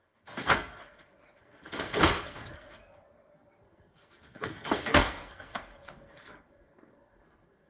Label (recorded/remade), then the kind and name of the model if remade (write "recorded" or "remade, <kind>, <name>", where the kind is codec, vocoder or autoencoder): remade, codec, SNAC